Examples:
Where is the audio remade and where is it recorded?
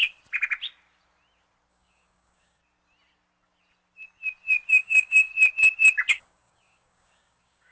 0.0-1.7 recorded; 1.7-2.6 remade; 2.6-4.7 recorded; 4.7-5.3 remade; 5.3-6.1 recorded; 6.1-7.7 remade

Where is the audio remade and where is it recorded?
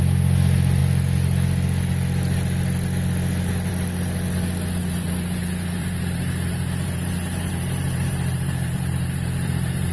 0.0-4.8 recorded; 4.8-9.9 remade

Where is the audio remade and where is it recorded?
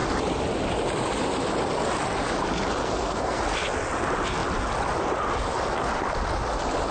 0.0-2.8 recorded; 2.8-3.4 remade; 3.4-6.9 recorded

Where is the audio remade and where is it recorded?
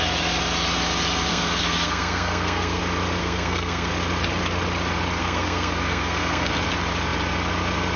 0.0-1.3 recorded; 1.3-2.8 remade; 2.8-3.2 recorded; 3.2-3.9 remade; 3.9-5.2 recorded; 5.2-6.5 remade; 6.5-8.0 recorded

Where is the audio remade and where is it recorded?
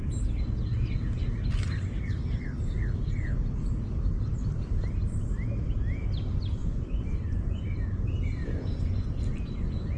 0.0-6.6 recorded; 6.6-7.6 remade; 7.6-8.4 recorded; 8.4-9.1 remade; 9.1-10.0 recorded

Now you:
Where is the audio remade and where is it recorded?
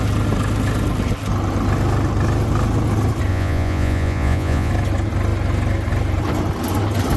0.0-3.3 recorded; 3.3-4.7 remade; 4.7-7.2 recorded